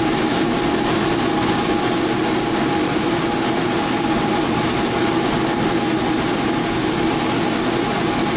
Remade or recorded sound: recorded